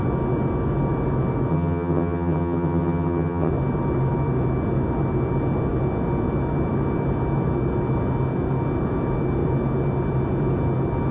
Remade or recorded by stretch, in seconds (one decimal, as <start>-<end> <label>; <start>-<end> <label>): 0.0-1.5 recorded; 1.5-3.5 remade; 3.5-11.1 recorded